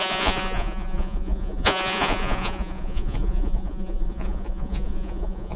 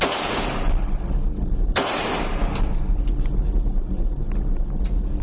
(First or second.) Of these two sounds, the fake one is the first